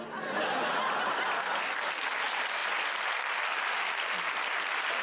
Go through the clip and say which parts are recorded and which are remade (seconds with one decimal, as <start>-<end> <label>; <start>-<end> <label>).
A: 0.0-5.0 recorded